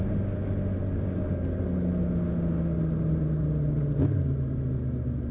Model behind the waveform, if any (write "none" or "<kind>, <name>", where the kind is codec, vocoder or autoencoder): none